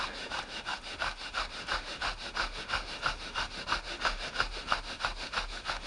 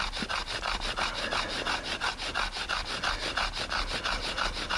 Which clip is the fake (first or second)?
first